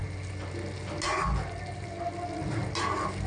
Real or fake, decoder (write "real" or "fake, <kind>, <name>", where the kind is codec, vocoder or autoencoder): real